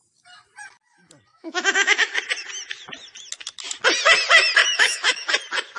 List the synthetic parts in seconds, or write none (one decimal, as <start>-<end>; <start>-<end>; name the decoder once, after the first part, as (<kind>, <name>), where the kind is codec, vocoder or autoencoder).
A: 1.3-2.2 (autoencoder, DAC-VAE); 4.6-5.3